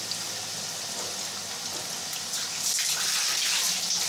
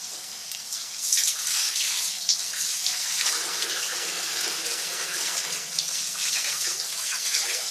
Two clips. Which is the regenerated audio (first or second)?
second